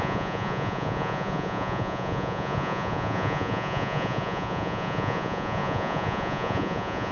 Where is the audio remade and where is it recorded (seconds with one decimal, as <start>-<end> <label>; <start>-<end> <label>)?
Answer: 0.0-7.1 remade